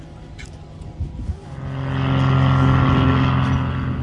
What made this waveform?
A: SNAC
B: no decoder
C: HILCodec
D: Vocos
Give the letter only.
B